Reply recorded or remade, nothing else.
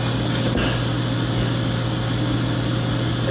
recorded